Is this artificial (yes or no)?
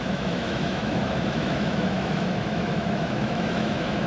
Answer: yes